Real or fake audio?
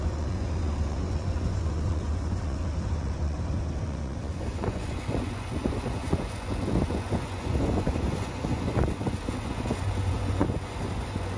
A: fake